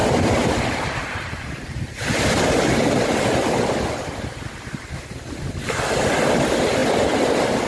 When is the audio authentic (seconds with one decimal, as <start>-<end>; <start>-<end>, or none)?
2.5-7.7